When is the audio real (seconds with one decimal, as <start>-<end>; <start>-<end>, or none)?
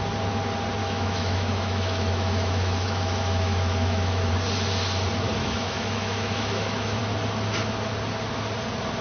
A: 0.0-0.8; 4.3-5.4; 7.0-9.0